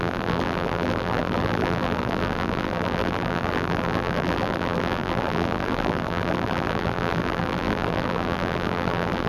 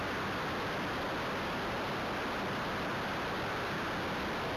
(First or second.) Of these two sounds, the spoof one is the first